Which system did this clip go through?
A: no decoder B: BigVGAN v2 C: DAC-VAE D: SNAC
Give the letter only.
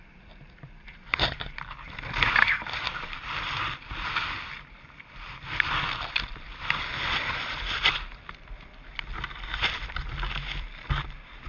B